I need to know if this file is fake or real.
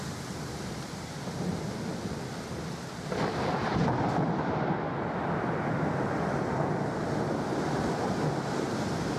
real